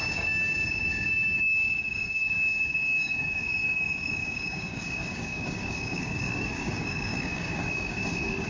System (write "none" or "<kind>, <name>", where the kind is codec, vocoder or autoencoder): codec, DAC